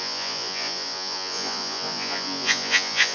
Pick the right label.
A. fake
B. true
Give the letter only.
A